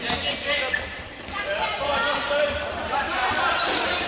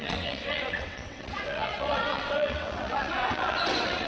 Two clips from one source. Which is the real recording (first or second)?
first